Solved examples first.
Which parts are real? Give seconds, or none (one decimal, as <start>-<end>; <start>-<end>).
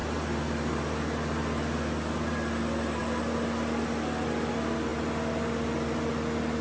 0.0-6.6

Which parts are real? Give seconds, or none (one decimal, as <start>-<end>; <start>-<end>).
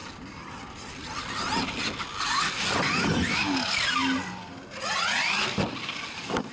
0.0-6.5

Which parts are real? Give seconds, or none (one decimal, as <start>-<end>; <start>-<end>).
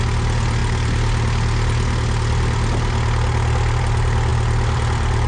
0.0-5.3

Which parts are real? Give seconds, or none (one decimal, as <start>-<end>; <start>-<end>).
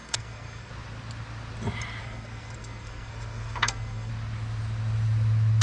0.7-2.0; 4.1-5.6